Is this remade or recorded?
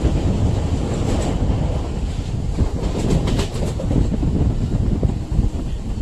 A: recorded